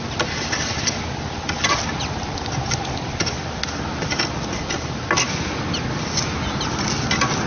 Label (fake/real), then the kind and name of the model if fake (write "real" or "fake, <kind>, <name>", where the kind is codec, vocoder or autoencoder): real